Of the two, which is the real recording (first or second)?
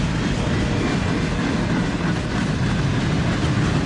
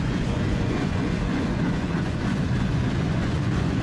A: first